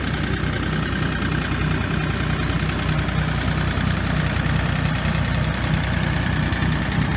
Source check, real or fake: real